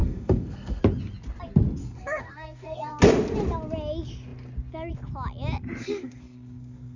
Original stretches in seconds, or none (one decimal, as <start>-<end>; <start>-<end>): 0.8-1.8; 3.0-5.8